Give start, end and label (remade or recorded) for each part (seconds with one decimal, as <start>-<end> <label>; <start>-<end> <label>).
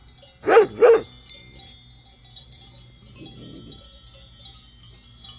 0.0-5.4 recorded